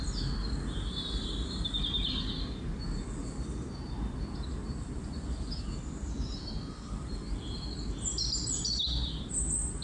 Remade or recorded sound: recorded